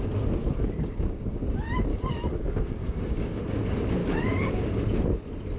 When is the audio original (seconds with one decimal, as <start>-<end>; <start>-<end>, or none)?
0.0-0.4; 1.4-1.9; 3.4-4.0; 4.7-5.6